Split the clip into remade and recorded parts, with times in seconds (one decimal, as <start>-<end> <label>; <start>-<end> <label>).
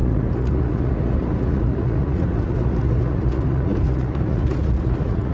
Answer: 0.0-5.3 remade